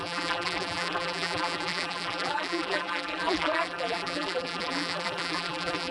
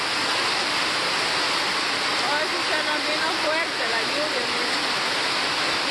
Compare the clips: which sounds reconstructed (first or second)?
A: first